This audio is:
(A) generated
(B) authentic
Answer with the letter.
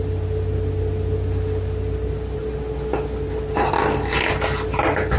B